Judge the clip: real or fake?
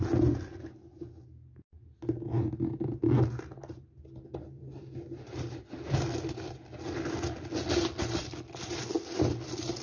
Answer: real